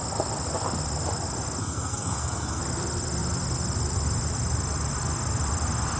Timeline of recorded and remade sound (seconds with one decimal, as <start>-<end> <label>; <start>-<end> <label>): 0.0-1.6 recorded; 1.6-2.6 remade; 2.6-6.0 recorded

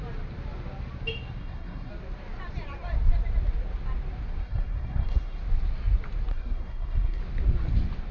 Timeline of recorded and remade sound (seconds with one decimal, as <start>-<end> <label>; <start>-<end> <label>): 0.0-1.4 recorded; 1.4-1.9 remade; 1.9-4.4 recorded; 4.4-5.4 remade; 5.4-6.3 recorded; 6.3-7.2 remade; 7.2-8.1 recorded

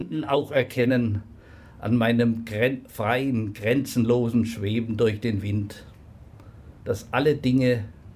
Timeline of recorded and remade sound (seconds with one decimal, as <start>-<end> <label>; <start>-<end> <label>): 0.0-0.9 remade; 0.9-8.2 recorded

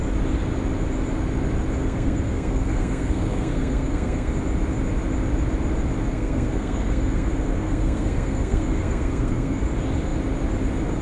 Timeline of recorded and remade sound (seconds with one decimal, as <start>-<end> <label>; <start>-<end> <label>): 0.0-1.8 recorded; 1.8-4.3 remade; 4.3-6.1 recorded; 6.1-9.6 remade; 9.6-11.0 recorded

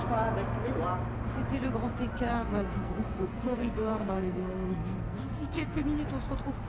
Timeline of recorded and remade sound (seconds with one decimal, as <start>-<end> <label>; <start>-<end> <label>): 0.0-2.3 recorded; 2.3-5.8 remade; 5.8-6.7 recorded

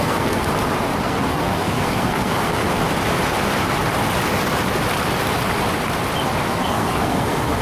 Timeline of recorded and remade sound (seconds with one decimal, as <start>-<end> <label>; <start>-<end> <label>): 0.0-0.5 remade; 0.5-1.0 recorded; 1.0-2.6 remade; 2.6-6.5 recorded; 6.5-7.6 remade

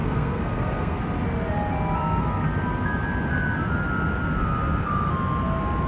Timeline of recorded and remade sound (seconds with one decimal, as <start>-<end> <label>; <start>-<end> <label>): 0.0-1.0 remade; 1.0-5.9 recorded

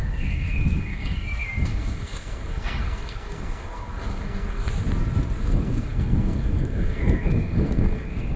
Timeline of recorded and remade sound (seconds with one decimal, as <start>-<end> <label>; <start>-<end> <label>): 0.0-4.7 remade; 4.7-5.4 recorded; 5.4-8.4 remade